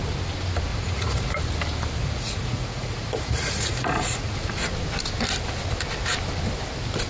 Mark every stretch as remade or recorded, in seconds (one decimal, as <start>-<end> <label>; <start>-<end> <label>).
0.0-0.7 recorded; 0.7-1.3 remade; 1.3-2.0 recorded; 2.0-4.6 remade; 4.6-7.1 recorded